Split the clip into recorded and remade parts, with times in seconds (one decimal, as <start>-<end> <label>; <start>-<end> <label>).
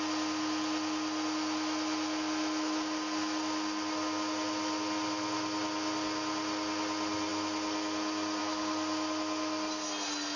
0.0-10.4 recorded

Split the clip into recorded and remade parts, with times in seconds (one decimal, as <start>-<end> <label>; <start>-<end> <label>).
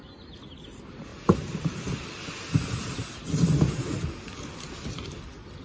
0.0-5.6 recorded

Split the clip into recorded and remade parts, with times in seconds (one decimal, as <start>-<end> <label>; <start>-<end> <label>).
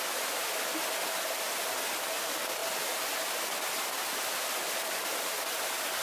0.0-6.0 recorded